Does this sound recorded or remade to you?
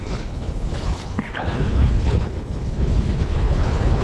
remade